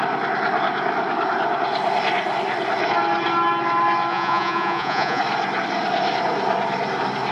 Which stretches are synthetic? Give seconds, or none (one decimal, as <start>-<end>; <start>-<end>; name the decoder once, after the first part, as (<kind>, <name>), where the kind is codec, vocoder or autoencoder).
4.1-5.2 (vocoder, Vocos)